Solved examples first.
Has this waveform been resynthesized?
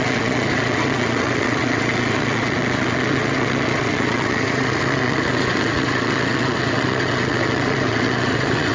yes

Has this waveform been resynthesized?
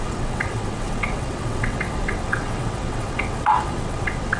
yes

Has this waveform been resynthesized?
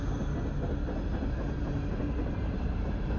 no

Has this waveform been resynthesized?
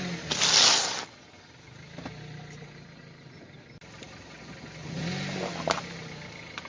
no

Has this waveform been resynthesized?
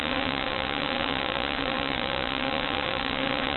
yes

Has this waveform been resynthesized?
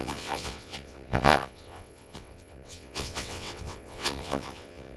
yes